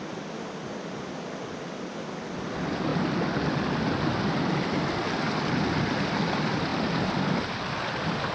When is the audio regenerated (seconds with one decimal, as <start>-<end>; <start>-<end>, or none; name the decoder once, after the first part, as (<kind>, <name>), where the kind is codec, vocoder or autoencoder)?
none